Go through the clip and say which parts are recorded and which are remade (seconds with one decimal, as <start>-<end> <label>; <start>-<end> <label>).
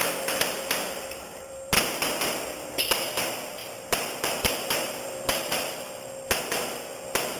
0.0-1.3 recorded; 1.3-3.2 remade; 3.2-3.6 recorded; 3.6-6.4 remade; 6.4-7.4 recorded